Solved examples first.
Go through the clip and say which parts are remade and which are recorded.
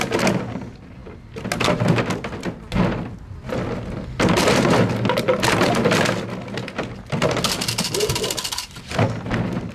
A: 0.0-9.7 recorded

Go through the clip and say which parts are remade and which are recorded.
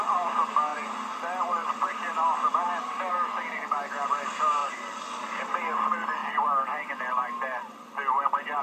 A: 0.0-4.6 recorded; 4.6-5.2 remade; 5.2-6.2 recorded; 6.2-6.9 remade; 6.9-8.6 recorded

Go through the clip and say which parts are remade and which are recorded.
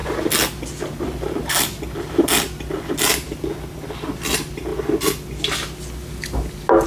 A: 0.0-6.9 recorded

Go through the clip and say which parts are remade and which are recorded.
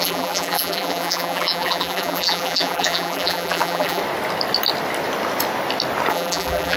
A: 0.0-4.0 remade; 4.0-6.1 recorded; 6.1-6.8 remade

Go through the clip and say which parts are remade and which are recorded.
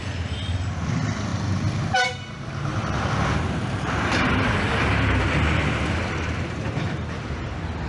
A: 0.0-1.3 recorded; 1.3-1.9 remade; 1.9-2.7 recorded; 2.7-7.4 remade; 7.4-7.9 recorded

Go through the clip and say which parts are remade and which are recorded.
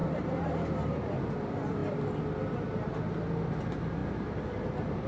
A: 0.0-1.2 remade; 1.2-4.0 recorded; 4.0-5.1 remade